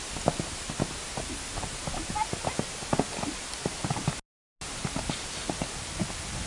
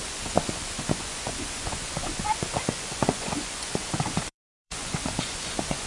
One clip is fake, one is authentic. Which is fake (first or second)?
second